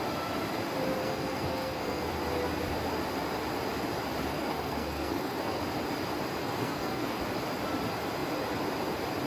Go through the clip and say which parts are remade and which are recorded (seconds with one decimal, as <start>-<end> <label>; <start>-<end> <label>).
0.0-1.0 recorded; 1.0-2.1 remade; 2.1-4.3 recorded; 4.3-5.6 remade; 5.6-6.4 recorded; 6.4-7.2 remade; 7.2-9.3 recorded